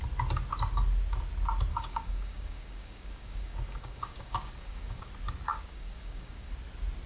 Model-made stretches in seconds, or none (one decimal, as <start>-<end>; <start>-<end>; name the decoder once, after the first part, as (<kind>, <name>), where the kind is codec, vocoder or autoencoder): 1.7-5.1 (codec, DAC); 5.5-6.5